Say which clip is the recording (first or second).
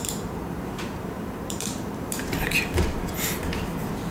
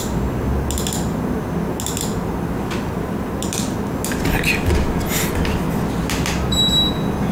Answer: second